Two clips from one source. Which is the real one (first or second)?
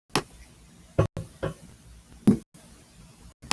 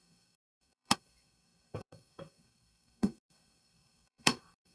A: first